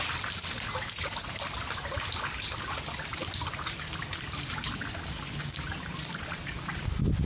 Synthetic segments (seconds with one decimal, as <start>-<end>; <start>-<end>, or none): none